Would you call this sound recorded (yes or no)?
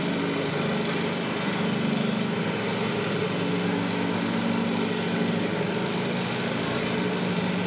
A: yes